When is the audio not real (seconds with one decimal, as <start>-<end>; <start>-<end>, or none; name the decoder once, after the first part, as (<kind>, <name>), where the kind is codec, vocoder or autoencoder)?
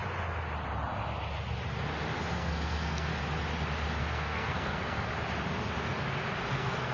2.3-3.1 (codec, SNAC); 4.0-5.1; 6.5-6.9